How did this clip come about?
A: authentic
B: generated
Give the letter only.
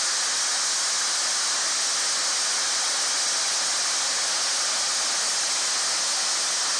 A